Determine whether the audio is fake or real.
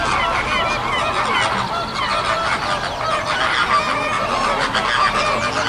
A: real